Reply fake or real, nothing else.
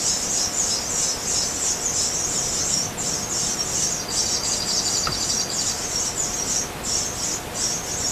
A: real